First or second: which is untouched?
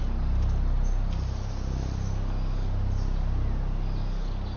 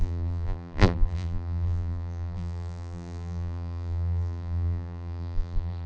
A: first